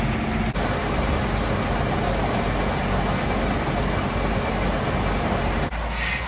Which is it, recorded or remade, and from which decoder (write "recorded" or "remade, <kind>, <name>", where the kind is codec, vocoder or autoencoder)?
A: recorded